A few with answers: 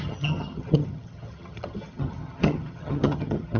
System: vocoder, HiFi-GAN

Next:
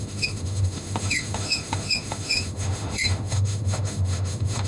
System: autoencoder, DAC-VAE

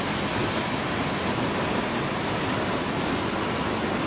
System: none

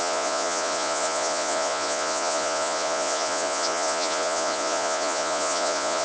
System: vocoder, Vocos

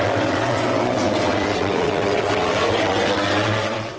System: vocoder, WaveNeXt